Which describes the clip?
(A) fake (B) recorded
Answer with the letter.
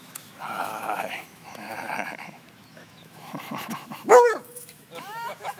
A